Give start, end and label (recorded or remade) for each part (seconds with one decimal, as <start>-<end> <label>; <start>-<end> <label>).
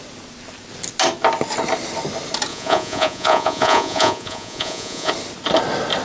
0.0-2.5 recorded; 2.5-5.1 remade; 5.1-6.0 recorded